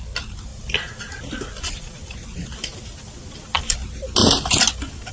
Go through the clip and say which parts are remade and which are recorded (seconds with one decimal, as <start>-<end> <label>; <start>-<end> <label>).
0.0-0.5 recorded; 0.5-3.6 remade; 3.6-5.1 recorded